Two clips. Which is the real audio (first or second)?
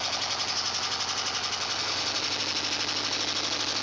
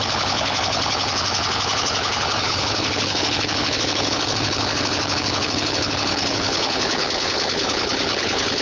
first